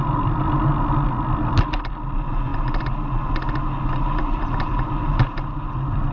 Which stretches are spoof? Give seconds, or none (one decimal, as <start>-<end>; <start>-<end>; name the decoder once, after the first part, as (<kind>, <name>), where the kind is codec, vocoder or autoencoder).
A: none